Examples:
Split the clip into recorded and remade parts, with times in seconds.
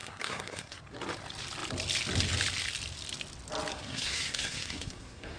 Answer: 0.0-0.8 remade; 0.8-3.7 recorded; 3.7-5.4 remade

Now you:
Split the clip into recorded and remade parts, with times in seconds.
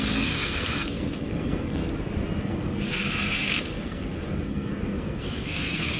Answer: 0.0-1.8 remade; 1.8-2.4 recorded; 2.4-6.0 remade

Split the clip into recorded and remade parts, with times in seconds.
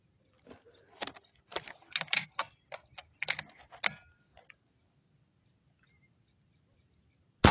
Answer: 0.0-7.5 recorded